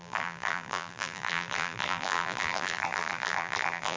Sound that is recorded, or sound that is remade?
remade